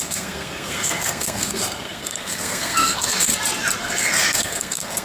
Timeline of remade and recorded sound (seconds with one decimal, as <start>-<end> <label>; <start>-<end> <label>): 0.0-3.3 remade; 3.3-3.8 recorded; 3.8-5.0 remade